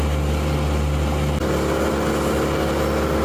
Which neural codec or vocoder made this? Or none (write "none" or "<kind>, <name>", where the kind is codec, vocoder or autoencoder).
none